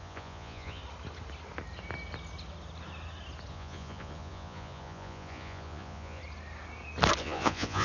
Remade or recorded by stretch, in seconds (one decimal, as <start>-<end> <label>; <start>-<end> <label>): 0.0-0.8 remade; 0.8-3.5 recorded; 3.5-6.2 remade; 6.2-7.2 recorded; 7.2-7.8 remade